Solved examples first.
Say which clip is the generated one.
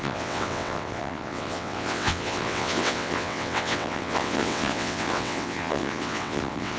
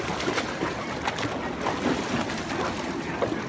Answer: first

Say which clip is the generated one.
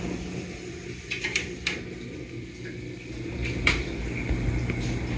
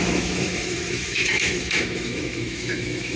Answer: second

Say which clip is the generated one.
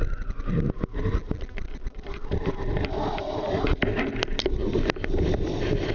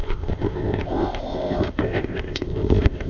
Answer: second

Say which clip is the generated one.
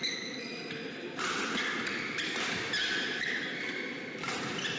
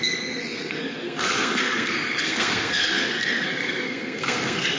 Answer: second